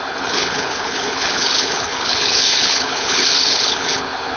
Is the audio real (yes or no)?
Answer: no